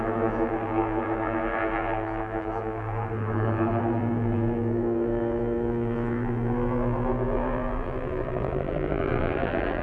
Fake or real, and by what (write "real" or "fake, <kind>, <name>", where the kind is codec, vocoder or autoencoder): fake, vocoder, BigVGAN v2